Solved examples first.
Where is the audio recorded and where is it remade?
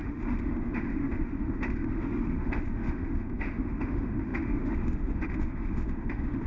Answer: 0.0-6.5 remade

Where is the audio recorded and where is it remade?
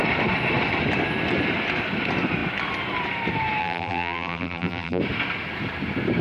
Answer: 0.0-3.6 recorded; 3.6-5.0 remade; 5.0-6.2 recorded